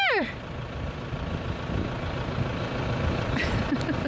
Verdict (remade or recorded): remade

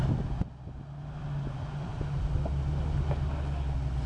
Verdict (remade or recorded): recorded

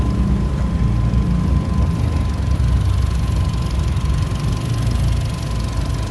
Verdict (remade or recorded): recorded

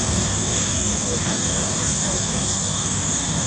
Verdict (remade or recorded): remade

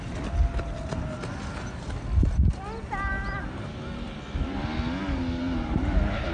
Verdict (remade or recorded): recorded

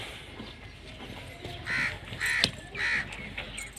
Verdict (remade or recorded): recorded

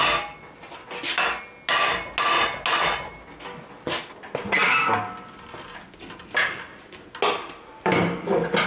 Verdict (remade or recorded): recorded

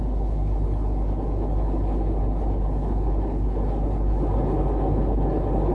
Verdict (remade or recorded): remade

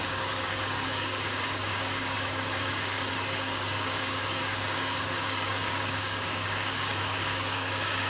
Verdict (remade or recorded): remade